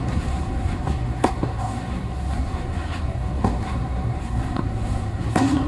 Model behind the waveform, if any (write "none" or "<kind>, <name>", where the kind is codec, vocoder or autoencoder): codec, SNAC